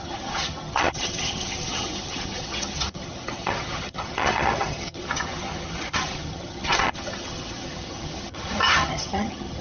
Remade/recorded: remade